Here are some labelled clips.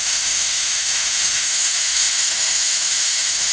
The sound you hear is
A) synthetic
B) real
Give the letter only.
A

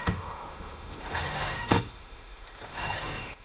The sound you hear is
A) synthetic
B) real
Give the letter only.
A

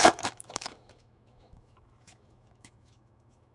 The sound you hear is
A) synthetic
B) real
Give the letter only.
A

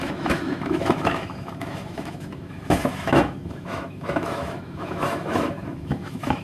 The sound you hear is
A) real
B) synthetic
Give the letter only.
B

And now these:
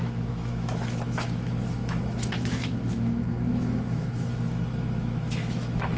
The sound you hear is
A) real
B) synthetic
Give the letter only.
B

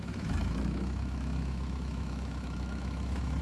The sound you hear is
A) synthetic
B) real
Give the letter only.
A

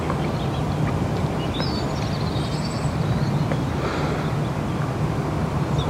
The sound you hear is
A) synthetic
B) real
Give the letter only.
B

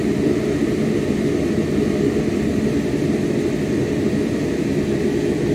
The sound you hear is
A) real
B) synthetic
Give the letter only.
A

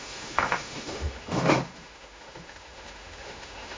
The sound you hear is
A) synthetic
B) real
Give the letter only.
A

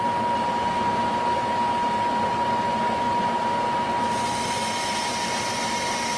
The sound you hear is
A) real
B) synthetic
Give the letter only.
A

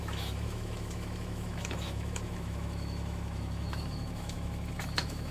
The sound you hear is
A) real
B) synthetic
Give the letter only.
B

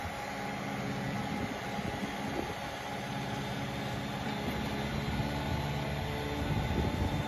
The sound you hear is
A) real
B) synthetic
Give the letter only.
A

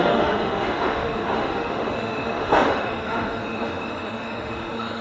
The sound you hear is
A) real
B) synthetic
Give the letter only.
B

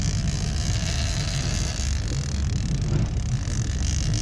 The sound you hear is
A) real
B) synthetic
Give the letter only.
A